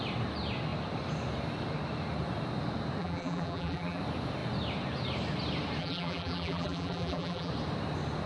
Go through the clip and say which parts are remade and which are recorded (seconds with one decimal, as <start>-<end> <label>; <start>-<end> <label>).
0.0-3.0 recorded; 3.0-4.0 remade; 4.0-5.8 recorded; 5.8-7.5 remade; 7.5-8.3 recorded